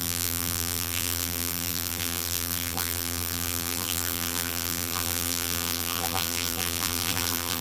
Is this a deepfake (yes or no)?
yes